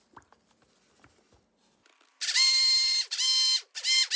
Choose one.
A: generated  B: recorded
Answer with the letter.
B